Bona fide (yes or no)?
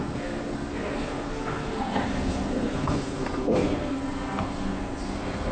no